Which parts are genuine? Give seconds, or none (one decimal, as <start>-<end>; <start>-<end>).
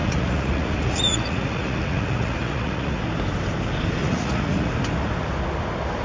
3.0-4.0; 4.7-6.0